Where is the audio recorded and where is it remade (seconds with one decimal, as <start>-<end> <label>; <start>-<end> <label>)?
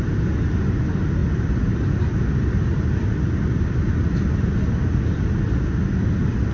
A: 0.0-6.5 recorded